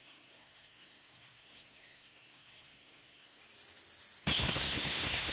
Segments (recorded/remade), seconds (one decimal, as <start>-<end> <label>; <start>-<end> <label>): 0.0-3.4 remade; 3.4-4.2 recorded; 4.2-5.3 remade